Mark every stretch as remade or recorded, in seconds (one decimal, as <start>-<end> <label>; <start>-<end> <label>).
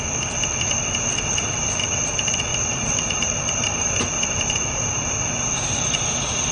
0.0-2.5 recorded; 2.5-4.0 remade; 4.0-6.5 recorded